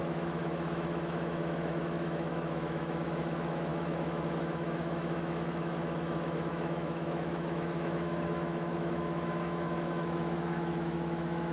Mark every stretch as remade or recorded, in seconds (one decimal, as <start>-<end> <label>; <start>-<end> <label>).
0.0-11.5 remade